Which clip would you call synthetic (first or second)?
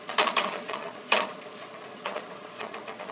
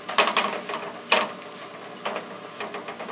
first